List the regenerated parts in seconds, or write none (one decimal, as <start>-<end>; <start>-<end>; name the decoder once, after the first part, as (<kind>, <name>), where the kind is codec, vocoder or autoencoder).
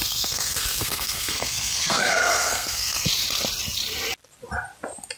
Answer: 0.0-3.1 (codec, SNAC)